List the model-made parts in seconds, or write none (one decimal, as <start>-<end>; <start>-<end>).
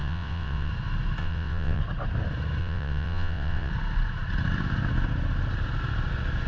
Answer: 0.0-0.7; 1.2-1.8; 2.6-3.7